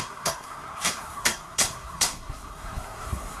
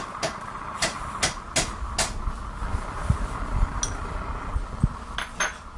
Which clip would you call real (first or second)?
second